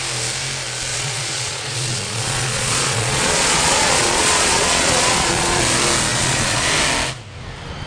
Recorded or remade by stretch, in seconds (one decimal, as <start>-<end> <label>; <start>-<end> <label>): 0.0-0.9 recorded; 0.9-5.6 remade; 5.6-6.1 recorded; 6.1-6.7 remade; 6.7-7.9 recorded